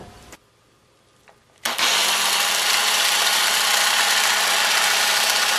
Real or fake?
fake